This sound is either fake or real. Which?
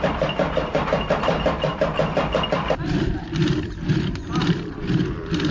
fake